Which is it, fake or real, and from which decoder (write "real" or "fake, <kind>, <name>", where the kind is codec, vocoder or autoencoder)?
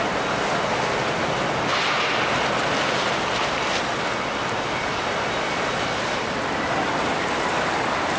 real